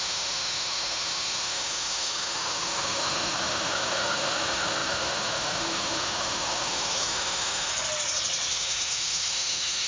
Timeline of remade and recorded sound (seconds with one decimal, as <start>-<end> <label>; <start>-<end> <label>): 0.0-7.7 remade; 7.7-8.5 recorded; 8.5-9.9 remade